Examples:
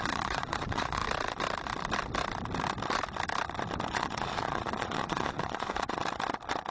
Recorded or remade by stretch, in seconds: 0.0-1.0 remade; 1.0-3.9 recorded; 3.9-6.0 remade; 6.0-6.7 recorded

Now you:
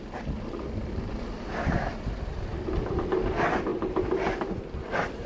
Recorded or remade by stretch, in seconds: 0.0-5.3 recorded

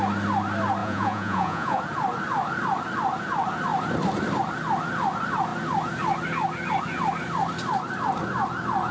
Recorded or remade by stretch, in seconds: 0.0-0.8 recorded; 0.8-1.8 remade; 1.8-8.9 recorded

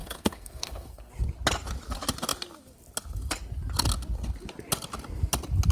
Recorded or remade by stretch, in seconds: 0.0-1.1 remade; 1.1-5.7 recorded

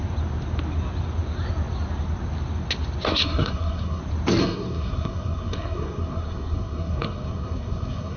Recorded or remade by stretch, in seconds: 0.0-3.1 recorded; 3.1-4.0 remade; 4.0-4.4 recorded; 4.4-8.2 remade